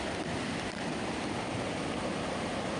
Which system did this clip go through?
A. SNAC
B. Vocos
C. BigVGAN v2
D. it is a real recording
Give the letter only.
D